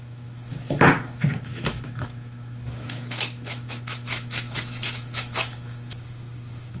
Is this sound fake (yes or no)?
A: yes